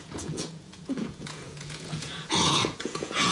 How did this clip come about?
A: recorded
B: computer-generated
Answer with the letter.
B